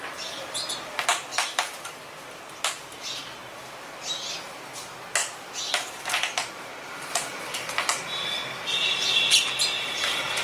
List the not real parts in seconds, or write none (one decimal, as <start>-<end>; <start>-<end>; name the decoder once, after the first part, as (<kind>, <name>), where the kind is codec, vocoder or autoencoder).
1.1-2.4 (vocoder, BigVGAN v2)